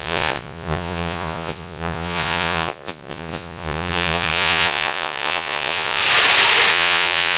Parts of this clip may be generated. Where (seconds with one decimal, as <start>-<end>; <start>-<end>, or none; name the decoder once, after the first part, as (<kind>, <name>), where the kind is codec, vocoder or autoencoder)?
0.0-6.0 (vocoder, Vocos); 6.7-7.4